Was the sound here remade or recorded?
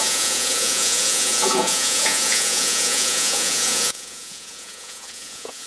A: remade